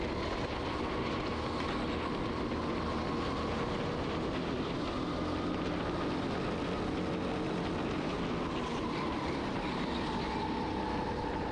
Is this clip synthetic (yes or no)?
no